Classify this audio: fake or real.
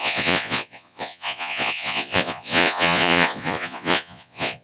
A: fake